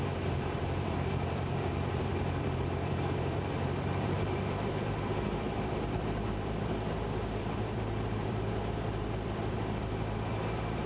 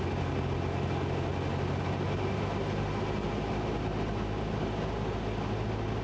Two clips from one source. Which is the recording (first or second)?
second